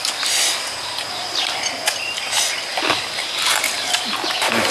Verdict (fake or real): real